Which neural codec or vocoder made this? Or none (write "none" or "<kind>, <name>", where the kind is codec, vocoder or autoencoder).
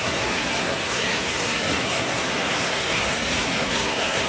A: codec, SNAC